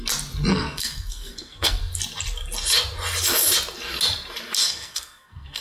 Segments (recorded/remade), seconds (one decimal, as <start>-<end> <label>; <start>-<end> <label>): 0.0-0.5 recorded; 0.5-1.8 remade; 1.8-4.6 recorded; 4.6-5.6 remade